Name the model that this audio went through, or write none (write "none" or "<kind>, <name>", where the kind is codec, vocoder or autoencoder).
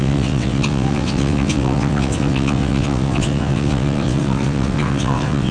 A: vocoder, WaveNeXt